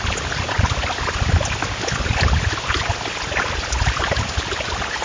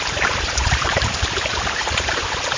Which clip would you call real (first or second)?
first